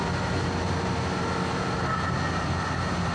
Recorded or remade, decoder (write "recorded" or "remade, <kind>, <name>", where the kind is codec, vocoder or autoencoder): recorded